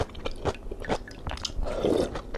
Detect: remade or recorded recorded